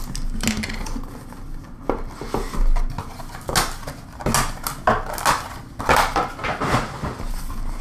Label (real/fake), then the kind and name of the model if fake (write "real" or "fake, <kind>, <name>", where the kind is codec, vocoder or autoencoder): real